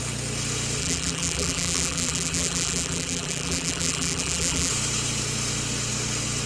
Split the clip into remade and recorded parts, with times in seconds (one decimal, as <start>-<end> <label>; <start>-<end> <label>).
0.0-0.8 recorded; 0.8-4.7 remade; 4.7-6.5 recorded